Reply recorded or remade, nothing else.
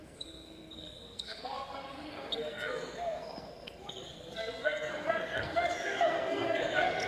remade